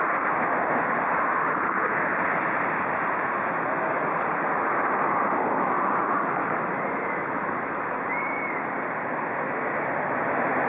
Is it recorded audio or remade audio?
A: recorded